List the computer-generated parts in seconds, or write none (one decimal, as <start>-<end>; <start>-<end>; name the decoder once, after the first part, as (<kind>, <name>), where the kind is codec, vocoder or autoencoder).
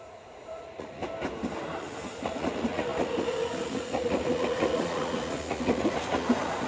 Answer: 0.0-1.0 (vocoder, Vocos); 1.8-6.7